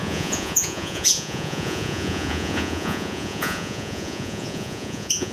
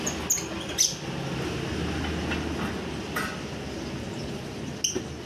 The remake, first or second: first